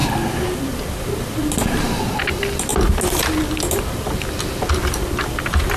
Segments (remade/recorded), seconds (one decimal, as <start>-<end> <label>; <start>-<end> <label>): 0.0-5.8 recorded